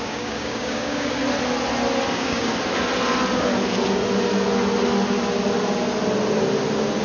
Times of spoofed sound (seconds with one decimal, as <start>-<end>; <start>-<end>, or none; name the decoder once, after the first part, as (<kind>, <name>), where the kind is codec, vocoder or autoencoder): 0.0-1.2 (codec, DAC); 2.1-2.5